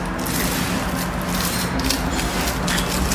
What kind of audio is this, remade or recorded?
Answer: recorded